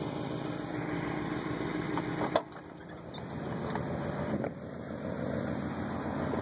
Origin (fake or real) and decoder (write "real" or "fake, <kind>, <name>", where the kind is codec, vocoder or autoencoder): real